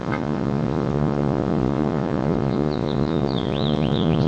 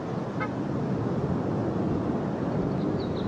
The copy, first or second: first